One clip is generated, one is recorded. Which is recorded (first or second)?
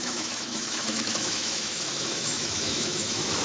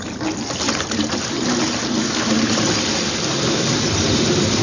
second